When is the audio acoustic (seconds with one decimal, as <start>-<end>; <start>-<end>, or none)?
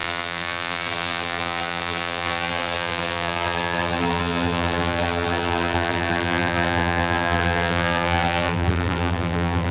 none